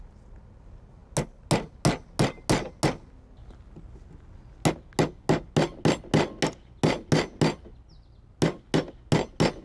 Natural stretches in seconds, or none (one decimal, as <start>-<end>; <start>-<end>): 0.0-9.6